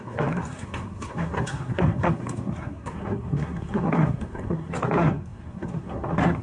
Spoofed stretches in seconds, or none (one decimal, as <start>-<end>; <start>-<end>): 0.0-6.4